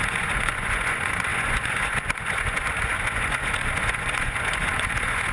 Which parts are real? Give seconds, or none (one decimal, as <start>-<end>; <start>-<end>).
none